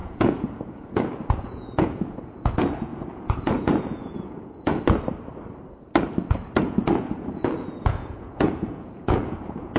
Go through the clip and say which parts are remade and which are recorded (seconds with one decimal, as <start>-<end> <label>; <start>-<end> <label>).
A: 0.0-4.7 remade; 4.7-6.6 recorded; 6.6-9.8 remade